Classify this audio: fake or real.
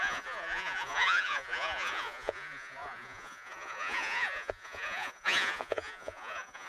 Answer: fake